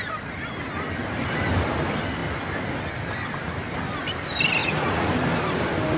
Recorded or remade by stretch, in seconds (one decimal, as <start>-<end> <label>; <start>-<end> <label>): 0.0-4.6 recorded; 4.6-5.1 remade; 5.1-6.0 recorded